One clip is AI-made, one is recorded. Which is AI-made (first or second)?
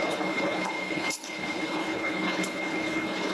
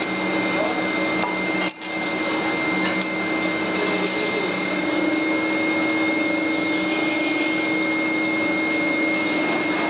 first